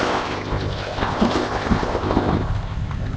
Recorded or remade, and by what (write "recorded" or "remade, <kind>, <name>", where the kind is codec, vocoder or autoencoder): remade, codec, ZipCodec